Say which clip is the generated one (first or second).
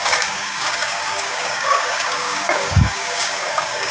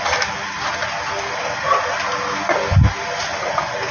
first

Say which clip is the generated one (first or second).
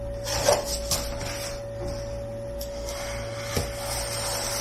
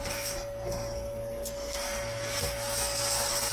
second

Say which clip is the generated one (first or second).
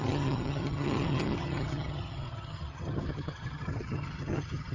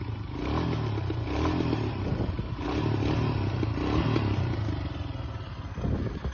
first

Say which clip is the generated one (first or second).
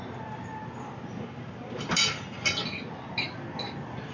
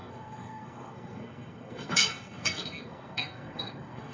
second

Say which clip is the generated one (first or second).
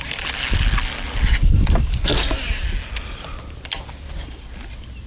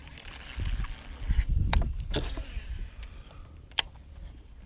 second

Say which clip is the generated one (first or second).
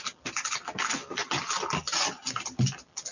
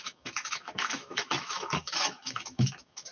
second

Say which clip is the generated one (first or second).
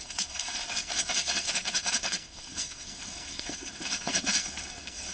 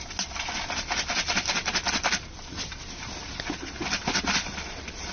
first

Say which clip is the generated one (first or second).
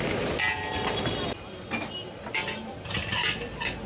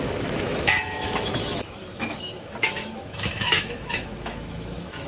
second